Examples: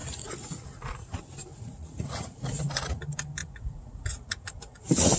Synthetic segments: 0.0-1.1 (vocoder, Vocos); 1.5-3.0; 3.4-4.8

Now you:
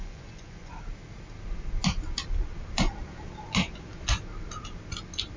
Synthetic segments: 0.0-0.8 (vocoder, Vocos)